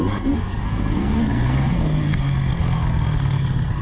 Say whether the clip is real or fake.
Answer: fake